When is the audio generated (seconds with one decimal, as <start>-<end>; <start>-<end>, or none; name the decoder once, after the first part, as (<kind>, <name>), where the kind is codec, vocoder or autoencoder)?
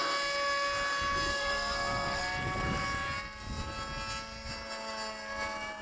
1.3-2.2 (codec, SNAC)